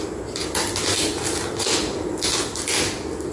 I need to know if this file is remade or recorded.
recorded